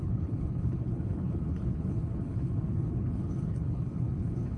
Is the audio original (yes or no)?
no